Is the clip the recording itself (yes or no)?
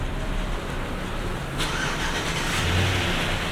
yes